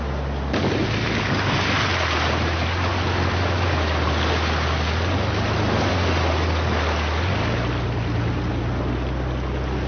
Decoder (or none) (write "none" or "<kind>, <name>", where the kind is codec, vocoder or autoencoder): none